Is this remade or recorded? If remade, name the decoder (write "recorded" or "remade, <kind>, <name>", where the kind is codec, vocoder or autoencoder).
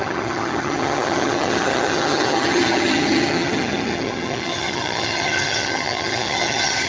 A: remade, vocoder, HiFi-GAN